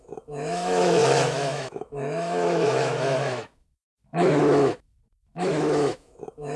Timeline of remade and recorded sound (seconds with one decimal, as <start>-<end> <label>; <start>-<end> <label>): 0.0-6.6 remade